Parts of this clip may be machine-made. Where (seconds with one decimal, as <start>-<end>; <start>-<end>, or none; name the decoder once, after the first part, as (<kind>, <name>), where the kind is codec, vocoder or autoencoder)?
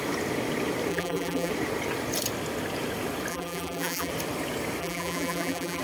0.9-1.5 (vocoder, BigVGAN v2); 3.3-4.1; 4.8-5.8